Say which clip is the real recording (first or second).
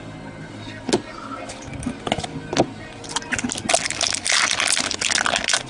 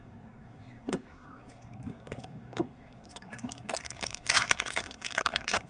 first